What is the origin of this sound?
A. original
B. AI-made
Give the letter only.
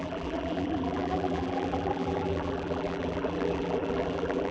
B